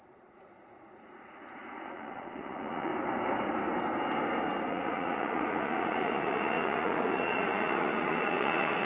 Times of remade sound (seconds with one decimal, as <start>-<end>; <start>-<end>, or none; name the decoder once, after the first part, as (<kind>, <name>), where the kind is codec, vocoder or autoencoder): 0.0-2.9 (vocoder, Vocos); 4.7-8.8